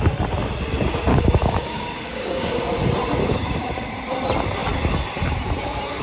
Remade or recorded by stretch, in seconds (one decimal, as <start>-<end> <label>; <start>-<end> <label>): 0.0-1.1 recorded; 1.1-2.7 remade; 2.7-3.2 recorded; 3.2-3.9 remade; 3.9-6.0 recorded